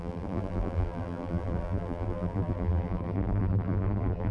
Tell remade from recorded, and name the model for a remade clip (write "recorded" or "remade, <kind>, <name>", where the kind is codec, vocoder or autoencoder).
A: remade, vocoder, BigVGAN v2